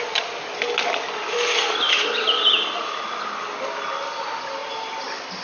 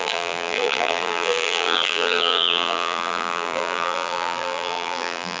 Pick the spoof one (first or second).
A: second